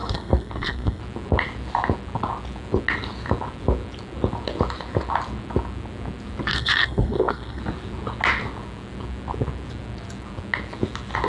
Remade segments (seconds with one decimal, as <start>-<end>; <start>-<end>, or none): 0.0-1.0; 6.5-7.6